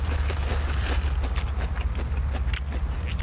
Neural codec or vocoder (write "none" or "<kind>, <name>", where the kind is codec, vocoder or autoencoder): none